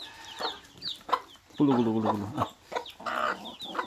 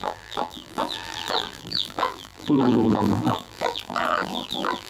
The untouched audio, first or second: first